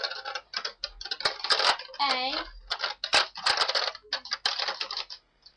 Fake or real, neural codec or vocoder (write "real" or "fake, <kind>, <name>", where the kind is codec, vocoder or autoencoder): real